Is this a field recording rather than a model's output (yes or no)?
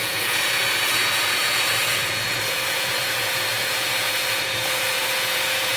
no